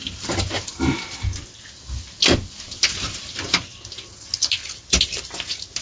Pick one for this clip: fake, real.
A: real